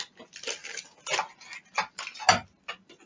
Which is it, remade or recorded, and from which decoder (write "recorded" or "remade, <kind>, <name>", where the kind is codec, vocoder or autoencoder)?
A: recorded